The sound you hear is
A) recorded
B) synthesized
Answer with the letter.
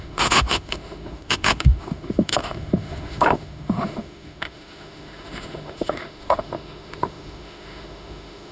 B